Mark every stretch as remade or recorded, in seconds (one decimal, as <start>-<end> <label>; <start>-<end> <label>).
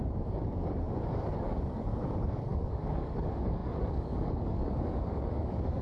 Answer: 0.0-5.8 remade